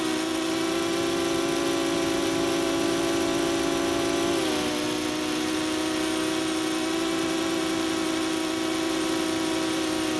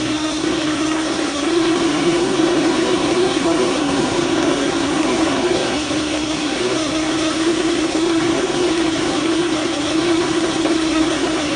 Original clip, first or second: first